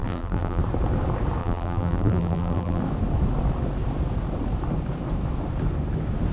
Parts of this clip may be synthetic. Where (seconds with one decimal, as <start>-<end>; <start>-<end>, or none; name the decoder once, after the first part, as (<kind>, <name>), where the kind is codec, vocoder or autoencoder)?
0.0-0.6 (vocoder, BigVGAN v2); 1.4-2.8